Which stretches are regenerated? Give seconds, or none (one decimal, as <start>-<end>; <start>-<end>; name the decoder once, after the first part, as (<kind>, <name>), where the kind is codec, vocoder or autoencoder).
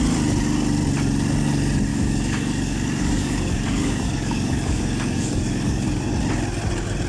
1.9-6.1 (codec, DAC)